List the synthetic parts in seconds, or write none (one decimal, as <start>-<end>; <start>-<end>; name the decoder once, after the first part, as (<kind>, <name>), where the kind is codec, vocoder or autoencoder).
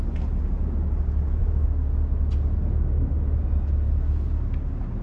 none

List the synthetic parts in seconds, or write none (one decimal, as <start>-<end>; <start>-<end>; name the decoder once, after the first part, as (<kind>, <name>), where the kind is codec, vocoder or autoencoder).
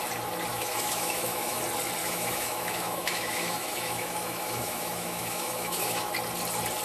0.5-1.6 (autoencoder, DAC-VAE); 2.0-6.1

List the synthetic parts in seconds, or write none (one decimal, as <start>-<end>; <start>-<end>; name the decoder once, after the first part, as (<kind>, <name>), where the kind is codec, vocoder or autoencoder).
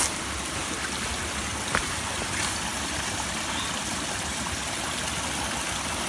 1.5-2.2 (vocoder, BigVGAN v2); 2.7-3.3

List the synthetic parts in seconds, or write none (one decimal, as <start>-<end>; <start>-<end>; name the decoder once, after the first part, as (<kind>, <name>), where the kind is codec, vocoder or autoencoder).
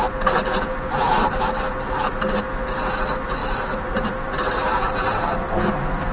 3.4-4.4 (vocoder, BigVGAN v2)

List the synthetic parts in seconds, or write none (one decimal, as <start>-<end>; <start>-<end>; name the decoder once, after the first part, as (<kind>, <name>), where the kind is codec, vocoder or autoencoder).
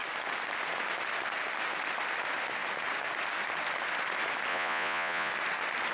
4.5-5.3 (vocoder, Vocos)